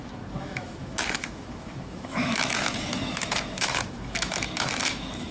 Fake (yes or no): yes